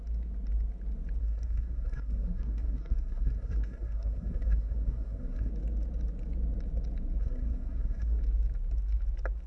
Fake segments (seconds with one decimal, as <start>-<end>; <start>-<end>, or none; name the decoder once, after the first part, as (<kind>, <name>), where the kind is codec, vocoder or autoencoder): 1.2-5.5 (codec, SNAC); 7.2-8.2